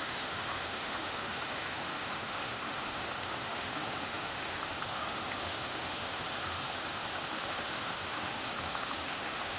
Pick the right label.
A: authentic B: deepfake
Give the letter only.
B